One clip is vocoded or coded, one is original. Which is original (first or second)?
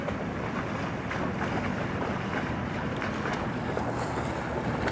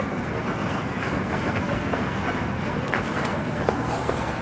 first